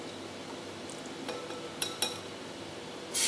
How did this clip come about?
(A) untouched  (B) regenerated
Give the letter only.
A